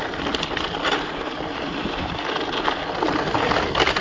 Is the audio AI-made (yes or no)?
no